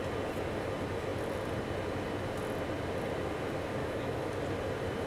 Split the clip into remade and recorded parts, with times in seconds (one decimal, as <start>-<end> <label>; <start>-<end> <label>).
0.0-3.8 recorded; 3.8-4.3 remade; 4.3-5.1 recorded